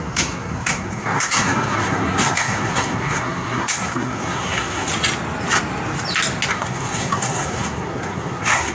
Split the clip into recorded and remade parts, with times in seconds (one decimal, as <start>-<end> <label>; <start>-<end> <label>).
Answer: 0.0-4.9 remade; 4.9-6.5 recorded; 6.5-8.7 remade